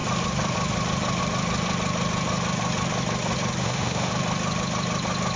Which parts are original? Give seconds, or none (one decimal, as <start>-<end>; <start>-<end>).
0.0-3.6; 4.1-5.4

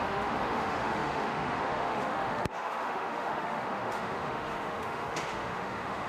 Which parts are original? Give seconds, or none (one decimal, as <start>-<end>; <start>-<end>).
none

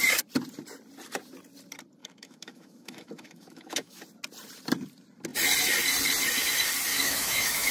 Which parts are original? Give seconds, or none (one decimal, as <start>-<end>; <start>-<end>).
0.0-2.0; 4.0-6.9

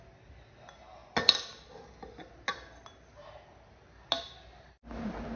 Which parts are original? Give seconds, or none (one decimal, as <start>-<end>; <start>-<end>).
0.0-5.4

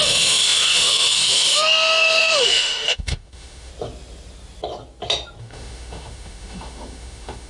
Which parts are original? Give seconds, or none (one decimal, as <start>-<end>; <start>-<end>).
3.7-5.4

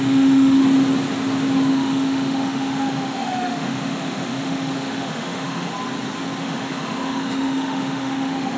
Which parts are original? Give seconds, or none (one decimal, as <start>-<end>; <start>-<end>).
0.6-1.7; 5.7-6.4

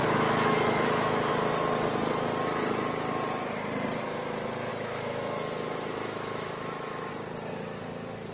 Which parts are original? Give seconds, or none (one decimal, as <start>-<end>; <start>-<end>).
1.3-4.7; 7.1-8.3